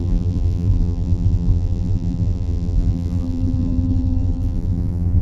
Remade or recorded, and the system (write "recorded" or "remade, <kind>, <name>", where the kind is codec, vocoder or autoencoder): remade, vocoder, BigVGAN v2